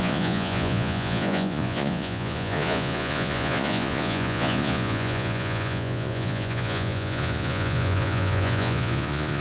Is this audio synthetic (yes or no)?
yes